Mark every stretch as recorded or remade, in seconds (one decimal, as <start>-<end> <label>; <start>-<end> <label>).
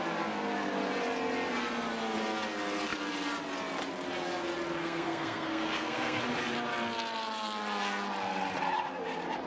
0.0-4.8 recorded; 4.8-6.2 remade; 6.2-9.5 recorded